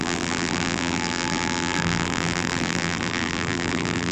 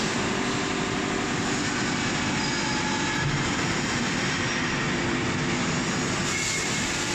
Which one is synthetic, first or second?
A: first